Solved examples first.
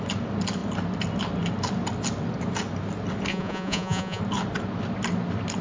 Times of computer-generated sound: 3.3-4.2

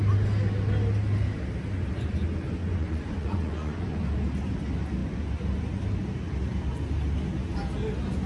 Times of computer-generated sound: 2.6-4.0

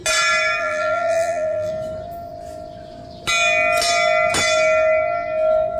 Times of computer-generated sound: 0.6-1.7

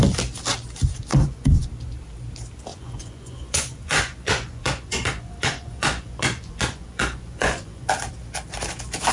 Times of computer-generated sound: 1.1-1.7; 2.7-7.9

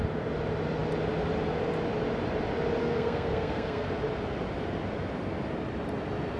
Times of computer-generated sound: 2.8-3.9